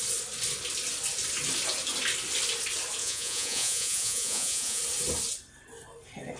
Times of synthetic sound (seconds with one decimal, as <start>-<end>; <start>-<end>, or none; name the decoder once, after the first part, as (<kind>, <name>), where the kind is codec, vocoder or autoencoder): 3.0-4.8 (vocoder, Vocos)